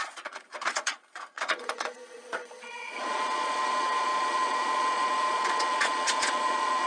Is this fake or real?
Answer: fake